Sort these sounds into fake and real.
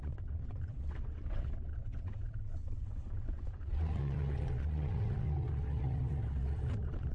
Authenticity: fake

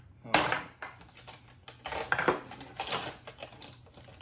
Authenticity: real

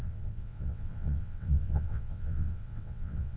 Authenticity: fake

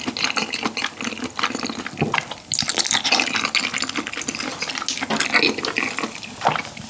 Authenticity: real